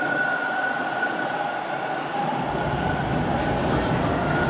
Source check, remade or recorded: recorded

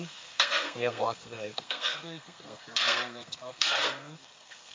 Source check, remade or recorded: remade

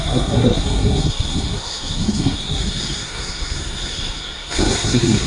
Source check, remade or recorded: remade